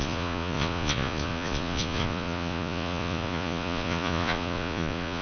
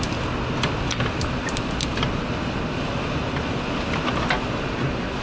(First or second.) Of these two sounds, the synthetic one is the first